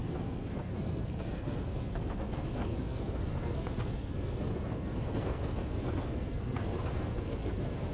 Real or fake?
fake